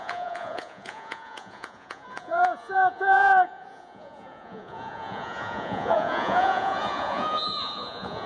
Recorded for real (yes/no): no